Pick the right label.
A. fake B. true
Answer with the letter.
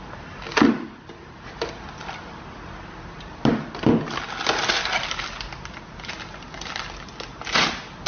B